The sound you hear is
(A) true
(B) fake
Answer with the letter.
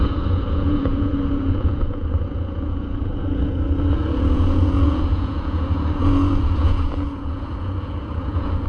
B